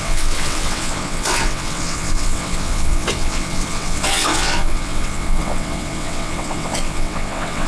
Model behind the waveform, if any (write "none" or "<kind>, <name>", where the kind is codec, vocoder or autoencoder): vocoder, WaveNeXt